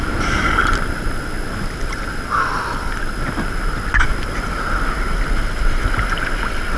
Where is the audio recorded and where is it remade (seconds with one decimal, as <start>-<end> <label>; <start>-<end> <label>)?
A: 0.0-6.8 recorded